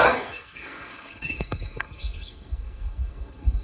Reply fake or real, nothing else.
fake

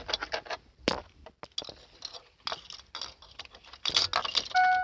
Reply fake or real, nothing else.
real